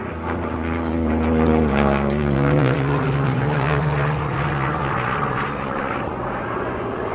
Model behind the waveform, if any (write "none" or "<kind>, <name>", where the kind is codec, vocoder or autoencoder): vocoder, Vocos